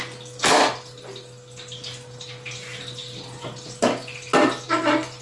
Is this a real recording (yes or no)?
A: yes